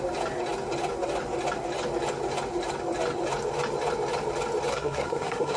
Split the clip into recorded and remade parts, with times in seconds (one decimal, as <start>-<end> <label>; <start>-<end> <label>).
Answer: 0.0-4.7 recorded; 4.7-5.6 remade